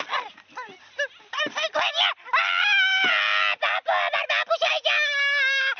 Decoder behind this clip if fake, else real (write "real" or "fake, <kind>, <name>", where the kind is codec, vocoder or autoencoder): real